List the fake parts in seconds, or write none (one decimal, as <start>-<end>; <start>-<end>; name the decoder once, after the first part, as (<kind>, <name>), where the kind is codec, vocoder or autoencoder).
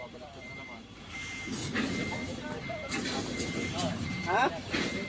0.0-1.6 (vocoder, BigVGAN v2); 2.7-5.1